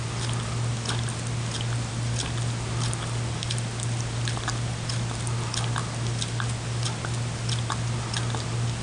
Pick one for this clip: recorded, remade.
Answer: recorded